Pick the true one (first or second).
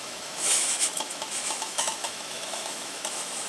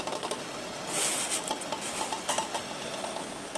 second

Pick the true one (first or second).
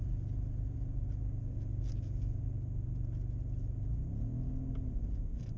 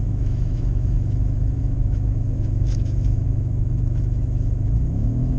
first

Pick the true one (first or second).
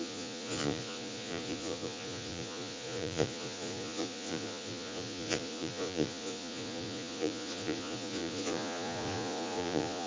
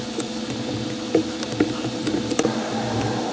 second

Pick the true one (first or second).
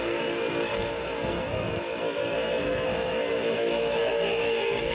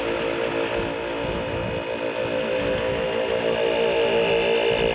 second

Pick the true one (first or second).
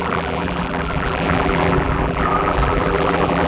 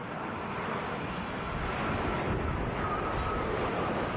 second